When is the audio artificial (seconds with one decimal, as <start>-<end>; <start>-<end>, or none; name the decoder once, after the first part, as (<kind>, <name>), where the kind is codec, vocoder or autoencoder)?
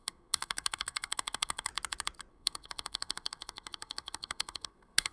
0.0-1.7 (codec, SNAC); 2.3-5.1